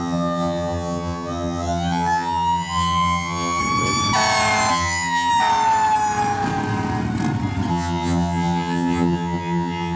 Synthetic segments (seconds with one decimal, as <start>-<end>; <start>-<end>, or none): 0.0-3.6; 4.7-5.3; 7.7-10.0